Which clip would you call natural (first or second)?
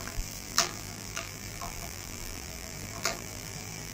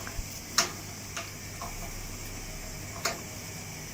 second